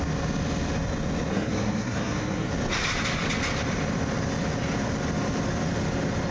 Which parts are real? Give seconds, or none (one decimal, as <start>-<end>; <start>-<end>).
0.0-1.3; 2.5-6.3

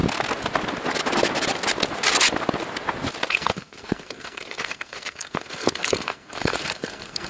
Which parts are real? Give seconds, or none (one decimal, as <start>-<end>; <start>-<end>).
0.0-3.3

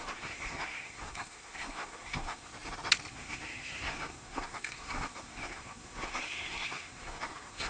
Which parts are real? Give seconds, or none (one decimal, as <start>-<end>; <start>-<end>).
2.5-3.1

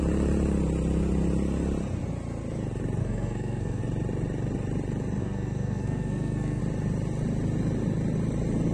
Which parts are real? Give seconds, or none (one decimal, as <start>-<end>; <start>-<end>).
0.0-3.0; 3.8-5.2; 6.6-8.7